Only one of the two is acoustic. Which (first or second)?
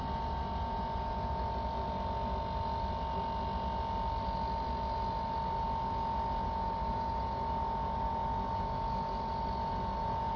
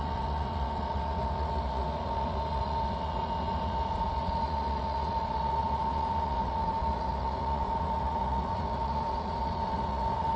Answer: first